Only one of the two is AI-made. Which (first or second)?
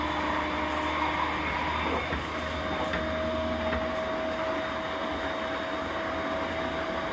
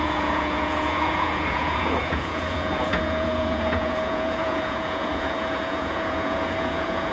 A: second